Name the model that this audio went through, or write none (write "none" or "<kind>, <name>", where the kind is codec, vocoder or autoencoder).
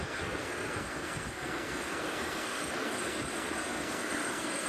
codec, SNAC